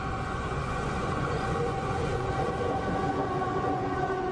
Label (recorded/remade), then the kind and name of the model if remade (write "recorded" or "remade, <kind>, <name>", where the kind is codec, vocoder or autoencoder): remade, vocoder, Vocos